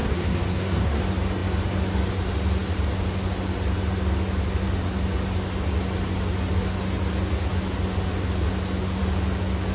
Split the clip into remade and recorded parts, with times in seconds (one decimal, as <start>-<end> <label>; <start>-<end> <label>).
0.0-1.0 remade; 1.0-9.7 recorded